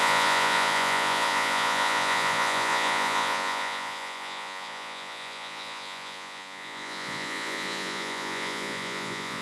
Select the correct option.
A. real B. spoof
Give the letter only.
B